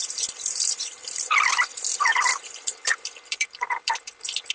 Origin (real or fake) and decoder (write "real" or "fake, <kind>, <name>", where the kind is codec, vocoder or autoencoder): fake, vocoder, BigVGAN v2